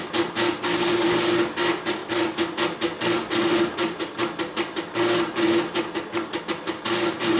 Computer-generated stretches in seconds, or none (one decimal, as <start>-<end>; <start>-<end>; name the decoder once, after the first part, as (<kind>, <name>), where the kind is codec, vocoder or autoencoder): none